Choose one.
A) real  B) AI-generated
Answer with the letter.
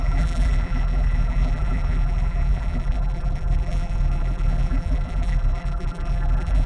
B